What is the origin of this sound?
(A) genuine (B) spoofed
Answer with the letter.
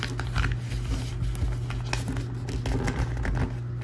A